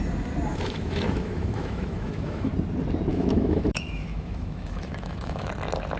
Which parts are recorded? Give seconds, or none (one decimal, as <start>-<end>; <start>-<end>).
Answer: 0.0-0.5; 2.5-3.1; 5.5-6.0